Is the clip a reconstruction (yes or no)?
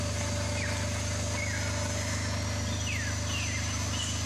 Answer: no